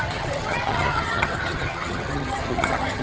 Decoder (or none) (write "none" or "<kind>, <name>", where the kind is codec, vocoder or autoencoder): vocoder, HiFi-GAN